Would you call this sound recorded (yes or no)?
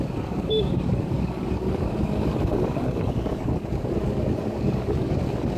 no